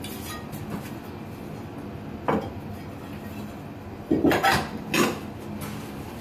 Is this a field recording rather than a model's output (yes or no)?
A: yes